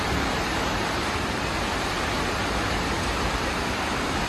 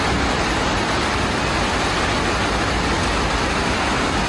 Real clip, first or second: second